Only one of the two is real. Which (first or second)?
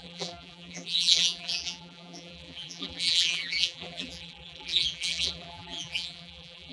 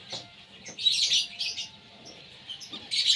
second